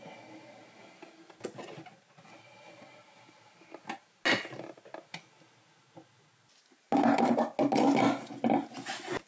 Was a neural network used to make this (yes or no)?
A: no